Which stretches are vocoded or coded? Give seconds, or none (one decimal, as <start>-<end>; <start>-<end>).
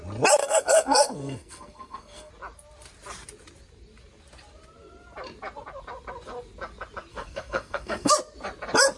0.4-2.3; 7.1-8.1